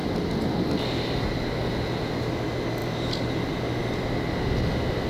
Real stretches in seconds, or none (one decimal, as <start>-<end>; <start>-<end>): 0.0-5.1